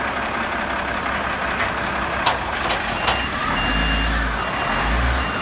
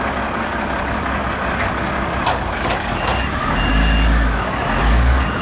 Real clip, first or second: first